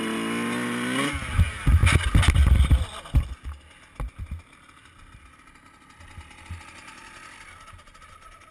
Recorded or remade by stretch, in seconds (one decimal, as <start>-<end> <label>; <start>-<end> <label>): 0.0-8.5 recorded